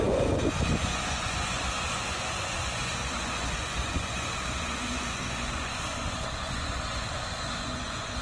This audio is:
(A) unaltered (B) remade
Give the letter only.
B